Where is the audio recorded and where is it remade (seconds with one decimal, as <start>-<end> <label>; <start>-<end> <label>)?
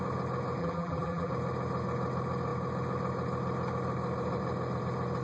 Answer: 0.0-0.6 recorded; 0.6-1.3 remade; 1.3-5.2 recorded